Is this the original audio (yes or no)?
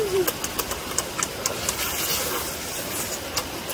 yes